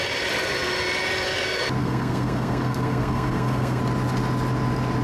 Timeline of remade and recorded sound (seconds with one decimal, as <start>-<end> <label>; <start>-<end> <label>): 0.0-1.8 recorded; 1.8-3.8 remade; 3.8-5.0 recorded